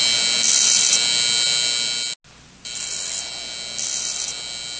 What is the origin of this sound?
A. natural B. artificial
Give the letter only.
A